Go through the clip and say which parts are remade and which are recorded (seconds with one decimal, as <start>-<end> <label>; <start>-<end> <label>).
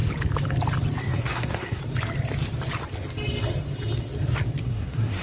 0.0-1.0 recorded; 1.0-1.8 remade; 1.8-4.6 recorded; 4.6-5.2 remade